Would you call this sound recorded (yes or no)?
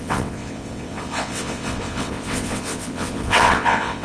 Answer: no